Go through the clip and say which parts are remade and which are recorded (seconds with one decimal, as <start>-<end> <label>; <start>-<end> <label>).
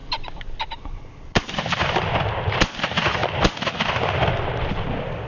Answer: 0.0-0.8 recorded; 0.8-3.2 remade; 3.2-3.9 recorded; 3.9-5.3 remade